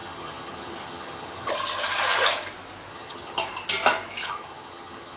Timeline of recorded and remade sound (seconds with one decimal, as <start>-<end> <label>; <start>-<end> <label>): 0.0-1.5 remade; 1.5-2.9 recorded; 2.9-3.4 remade; 3.4-4.2 recorded; 4.2-5.2 remade